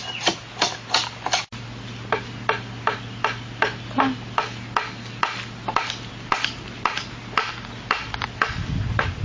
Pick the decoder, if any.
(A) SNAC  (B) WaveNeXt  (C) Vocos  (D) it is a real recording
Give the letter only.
D